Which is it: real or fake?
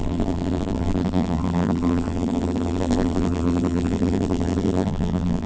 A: fake